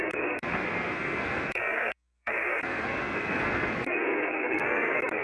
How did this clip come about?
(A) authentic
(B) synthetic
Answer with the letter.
B